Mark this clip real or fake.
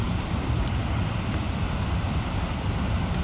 fake